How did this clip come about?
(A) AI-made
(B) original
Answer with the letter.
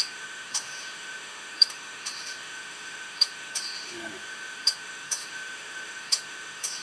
A